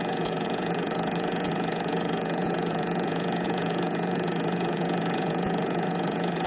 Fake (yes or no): yes